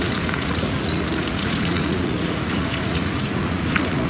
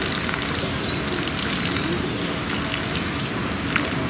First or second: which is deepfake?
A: first